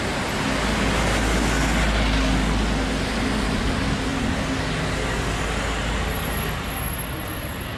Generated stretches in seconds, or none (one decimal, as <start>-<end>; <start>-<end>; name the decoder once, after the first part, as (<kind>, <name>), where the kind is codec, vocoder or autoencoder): none